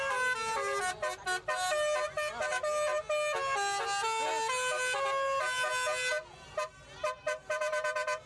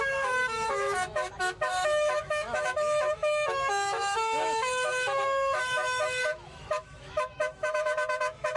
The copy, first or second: second